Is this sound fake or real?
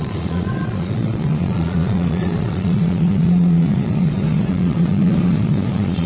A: fake